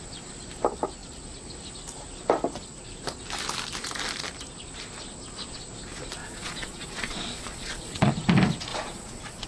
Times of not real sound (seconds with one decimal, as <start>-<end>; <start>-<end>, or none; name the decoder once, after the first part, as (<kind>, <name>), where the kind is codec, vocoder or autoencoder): 6.2-8.1 (vocoder, Vocos); 8.7-9.5